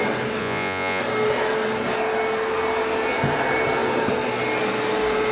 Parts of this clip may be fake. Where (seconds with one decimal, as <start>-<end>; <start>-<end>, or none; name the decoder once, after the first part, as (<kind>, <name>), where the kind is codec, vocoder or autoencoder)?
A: 0.4-1.0 (vocoder, Vocos)